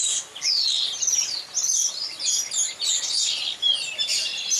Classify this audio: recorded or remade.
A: recorded